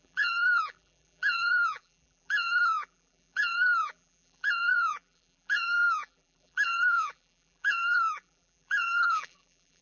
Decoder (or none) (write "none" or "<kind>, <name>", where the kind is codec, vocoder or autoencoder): vocoder, BigVGAN v2